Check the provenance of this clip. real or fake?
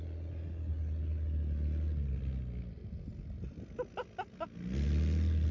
real